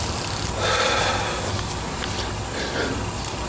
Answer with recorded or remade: recorded